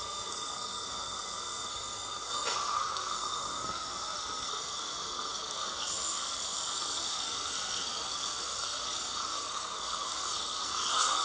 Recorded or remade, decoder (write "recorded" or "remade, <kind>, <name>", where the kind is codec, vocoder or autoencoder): remade, codec, SNAC